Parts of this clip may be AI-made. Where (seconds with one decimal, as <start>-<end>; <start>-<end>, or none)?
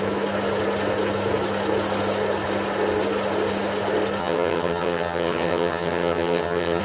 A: 4.2-6.8